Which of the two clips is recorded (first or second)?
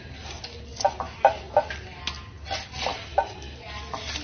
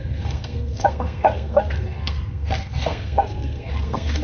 first